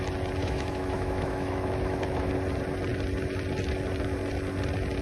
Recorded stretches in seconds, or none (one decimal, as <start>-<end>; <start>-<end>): 0.0-0.4; 2.3-5.0